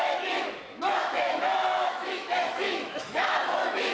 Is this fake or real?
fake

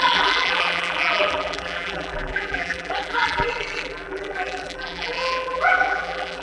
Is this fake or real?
fake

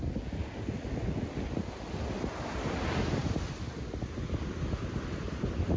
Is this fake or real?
real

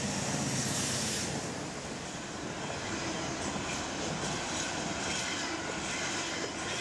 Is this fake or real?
real